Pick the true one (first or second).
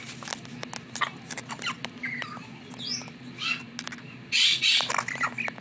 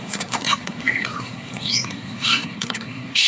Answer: first